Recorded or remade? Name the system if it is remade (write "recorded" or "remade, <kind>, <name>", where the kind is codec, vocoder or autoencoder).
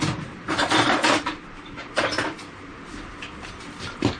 remade, vocoder, BigVGAN v2